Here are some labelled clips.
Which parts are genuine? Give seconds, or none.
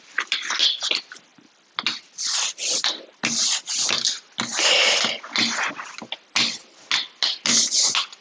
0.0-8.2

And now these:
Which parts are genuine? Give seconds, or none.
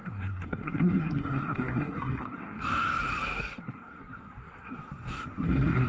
none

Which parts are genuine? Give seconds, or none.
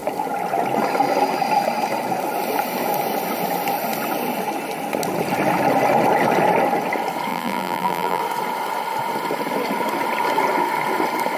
0.0-7.3; 8.2-11.4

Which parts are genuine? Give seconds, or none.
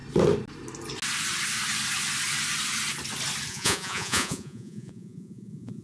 0.0-3.5